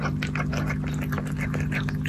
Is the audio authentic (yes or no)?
yes